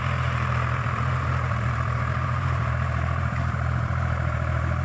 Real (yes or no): no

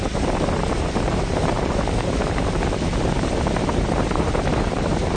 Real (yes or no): no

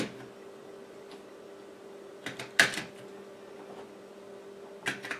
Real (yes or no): yes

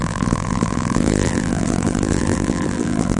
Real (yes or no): no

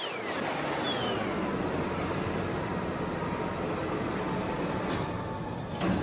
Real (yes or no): yes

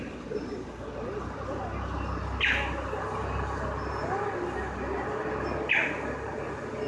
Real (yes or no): yes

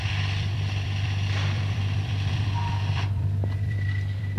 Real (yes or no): no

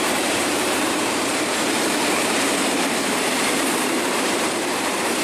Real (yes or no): no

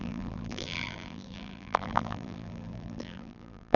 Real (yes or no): no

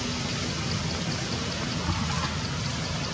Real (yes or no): yes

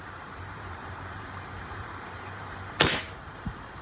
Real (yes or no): no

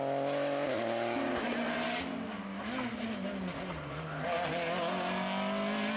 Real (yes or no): yes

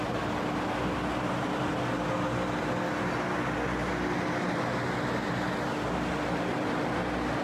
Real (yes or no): yes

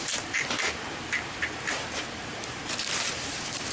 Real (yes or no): no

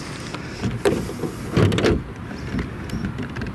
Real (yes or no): yes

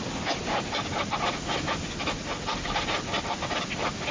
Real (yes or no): yes